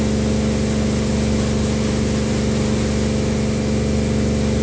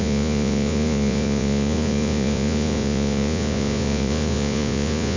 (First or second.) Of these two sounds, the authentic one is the first